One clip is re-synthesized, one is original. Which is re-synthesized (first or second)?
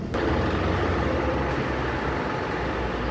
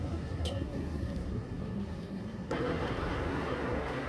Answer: second